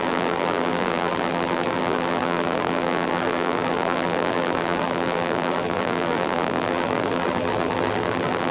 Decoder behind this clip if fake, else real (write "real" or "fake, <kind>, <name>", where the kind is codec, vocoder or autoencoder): fake, vocoder, BigVGAN v2